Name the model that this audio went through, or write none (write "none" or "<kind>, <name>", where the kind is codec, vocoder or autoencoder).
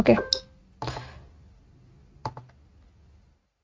none